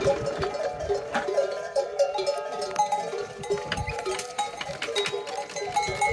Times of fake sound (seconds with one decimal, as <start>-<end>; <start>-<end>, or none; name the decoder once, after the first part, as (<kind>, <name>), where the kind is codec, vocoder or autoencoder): 1.1-4.8 (vocoder, BigVGAN v2)